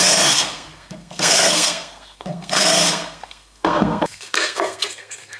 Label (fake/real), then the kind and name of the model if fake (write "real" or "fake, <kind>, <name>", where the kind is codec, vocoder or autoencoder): fake, codec, SNAC